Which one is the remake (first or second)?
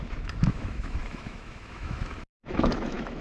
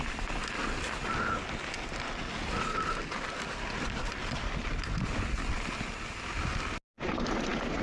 first